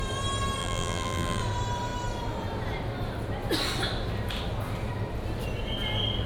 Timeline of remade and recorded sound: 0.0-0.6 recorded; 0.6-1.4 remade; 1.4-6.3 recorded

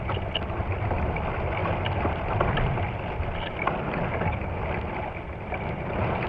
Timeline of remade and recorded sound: 0.0-6.3 recorded

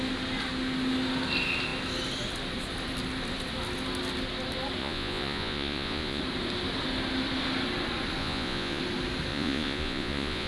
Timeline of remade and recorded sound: 0.0-4.8 recorded; 4.8-6.2 remade; 6.2-8.2 recorded; 8.2-8.8 remade; 8.8-9.3 recorded; 9.3-10.5 remade

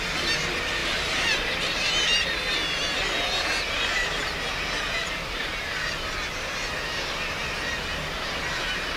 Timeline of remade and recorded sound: 0.0-0.8 recorded; 0.8-1.9 remade; 1.9-5.0 recorded; 5.0-5.6 remade; 5.6-9.0 recorded

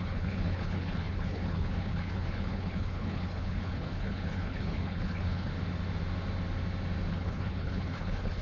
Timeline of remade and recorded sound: 0.0-5.5 remade; 5.5-7.1 recorded; 7.1-8.4 remade

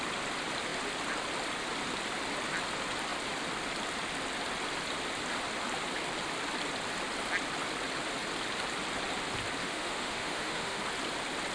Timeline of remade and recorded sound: 0.0-9.6 recorded; 9.6-10.8 remade; 10.8-11.5 recorded

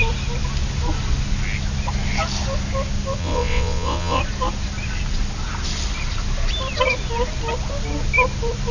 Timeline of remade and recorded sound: 0.0-3.2 recorded; 3.2-4.2 remade; 4.2-8.7 recorded

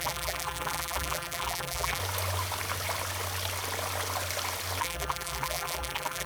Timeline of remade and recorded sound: 0.0-2.0 remade; 2.0-4.8 recorded; 4.8-6.3 remade